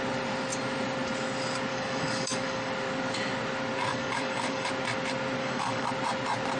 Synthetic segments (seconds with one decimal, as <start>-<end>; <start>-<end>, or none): 1.7-2.7; 3.9-4.7; 5.4-5.9